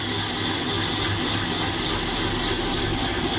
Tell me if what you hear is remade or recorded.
recorded